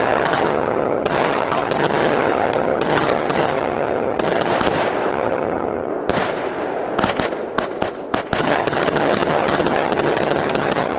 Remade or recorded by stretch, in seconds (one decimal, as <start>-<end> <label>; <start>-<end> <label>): 0.0-4.5 remade; 4.5-5.1 recorded; 5.1-5.9 remade; 5.9-8.4 recorded; 8.4-11.0 remade